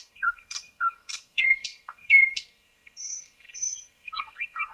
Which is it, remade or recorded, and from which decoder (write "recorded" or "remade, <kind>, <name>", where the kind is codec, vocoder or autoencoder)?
remade, codec, SNAC